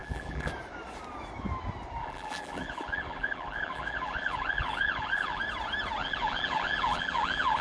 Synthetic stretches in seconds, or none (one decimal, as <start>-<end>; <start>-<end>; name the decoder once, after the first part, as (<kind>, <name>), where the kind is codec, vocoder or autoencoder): 0.0-0.5 (vocoder, BigVGAN v2); 2.0-5.4; 6.0-7.6